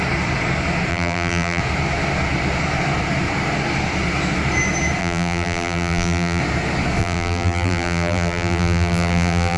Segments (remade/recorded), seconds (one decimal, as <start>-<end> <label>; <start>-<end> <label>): 0.0-0.9 recorded; 0.9-1.6 remade; 1.6-5.0 recorded; 5.0-6.4 remade; 6.4-7.0 recorded; 7.0-9.6 remade